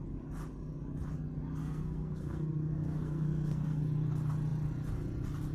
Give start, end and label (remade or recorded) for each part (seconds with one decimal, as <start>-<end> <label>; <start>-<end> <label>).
0.0-1.6 recorded; 1.6-3.8 remade; 3.8-5.5 recorded